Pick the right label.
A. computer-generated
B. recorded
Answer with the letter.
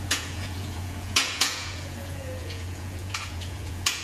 A